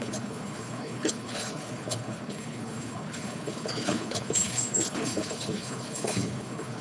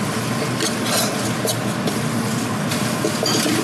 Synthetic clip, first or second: first